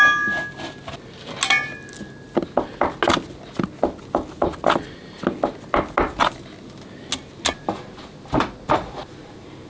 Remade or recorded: recorded